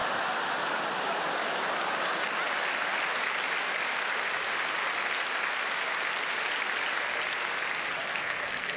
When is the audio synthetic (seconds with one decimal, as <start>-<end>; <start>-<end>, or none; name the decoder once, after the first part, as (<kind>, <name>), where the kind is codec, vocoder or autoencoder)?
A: 8.0-8.8 (codec, SNAC)